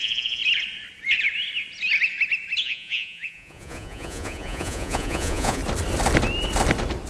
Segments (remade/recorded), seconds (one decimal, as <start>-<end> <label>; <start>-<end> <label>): 0.0-0.4 remade; 0.4-2.6 recorded; 2.6-5.6 remade; 5.6-7.1 recorded